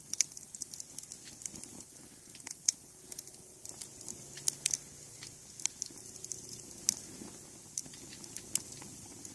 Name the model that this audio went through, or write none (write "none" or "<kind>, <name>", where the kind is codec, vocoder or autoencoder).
none